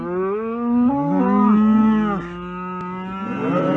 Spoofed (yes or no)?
no